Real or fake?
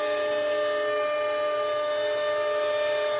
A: real